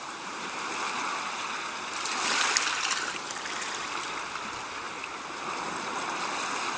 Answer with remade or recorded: recorded